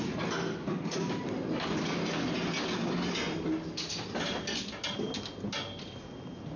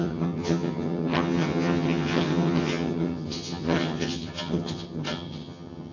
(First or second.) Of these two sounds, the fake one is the second